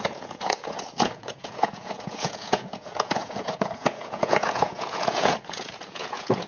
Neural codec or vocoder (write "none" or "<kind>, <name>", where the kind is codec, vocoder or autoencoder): vocoder, Vocos